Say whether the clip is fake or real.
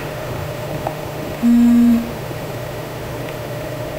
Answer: fake